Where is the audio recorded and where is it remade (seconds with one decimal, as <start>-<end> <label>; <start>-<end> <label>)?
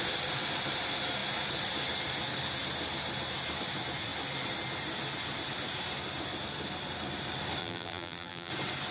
0.0-7.6 recorded; 7.6-8.5 remade; 8.5-8.9 recorded